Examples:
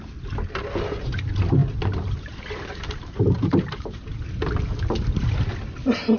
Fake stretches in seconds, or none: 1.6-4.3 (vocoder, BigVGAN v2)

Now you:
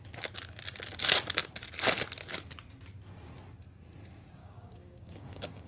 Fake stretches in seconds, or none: 4.4-5.7 (codec, DAC)

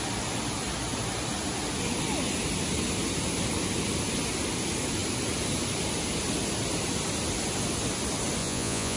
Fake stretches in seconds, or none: 8.4-9.0 (vocoder, Vocos)